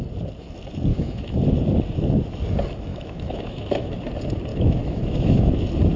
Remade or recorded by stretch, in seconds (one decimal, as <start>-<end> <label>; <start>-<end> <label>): 0.0-0.9 recorded; 0.9-1.4 remade; 1.4-2.9 recorded; 2.9-3.9 remade; 3.9-4.5 recorded; 4.5-5.5 remade; 5.5-6.0 recorded